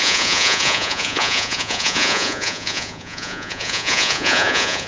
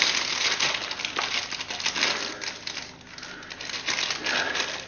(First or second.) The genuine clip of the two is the second